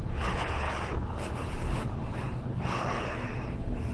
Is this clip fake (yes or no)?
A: yes